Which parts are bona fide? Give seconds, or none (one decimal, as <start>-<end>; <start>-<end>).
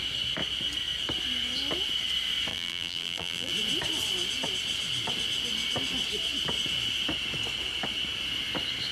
0.0-2.5; 3.5-8.9